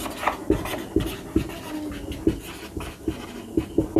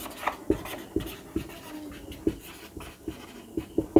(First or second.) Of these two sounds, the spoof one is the second